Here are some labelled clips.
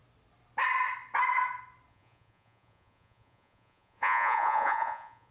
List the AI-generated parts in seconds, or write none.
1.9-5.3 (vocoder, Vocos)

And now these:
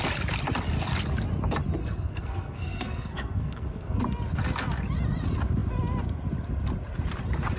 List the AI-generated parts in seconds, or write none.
1.8-4.0 (codec, SNAC)

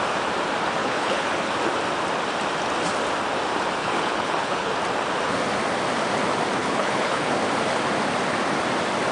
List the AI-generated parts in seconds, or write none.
0.8-1.5 (codec, HILCodec); 3.8-4.7; 6.6-7.3

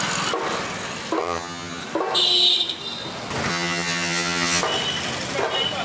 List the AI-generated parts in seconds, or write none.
1.2-1.8 (vocoder, HiFi-GAN); 3.5-4.6

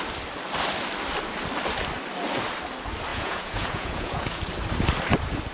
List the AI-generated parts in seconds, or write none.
3.1-4.4 (vocoder, Vocos)

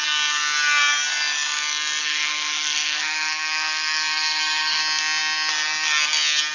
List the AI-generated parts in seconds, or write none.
2.0-4.8 (codec, SNAC)